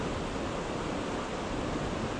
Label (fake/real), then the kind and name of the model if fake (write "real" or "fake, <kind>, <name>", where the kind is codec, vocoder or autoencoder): real